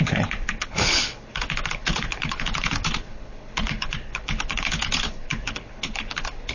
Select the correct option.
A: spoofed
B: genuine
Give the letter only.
A